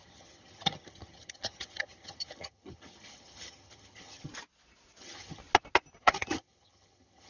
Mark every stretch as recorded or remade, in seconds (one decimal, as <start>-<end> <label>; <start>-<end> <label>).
0.0-4.3 remade; 4.3-5.0 recorded; 5.0-5.4 remade; 5.4-6.0 recorded; 6.0-7.3 remade